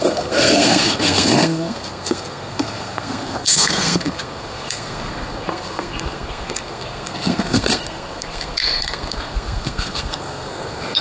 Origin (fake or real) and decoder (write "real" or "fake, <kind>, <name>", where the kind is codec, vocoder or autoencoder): fake, codec, SNAC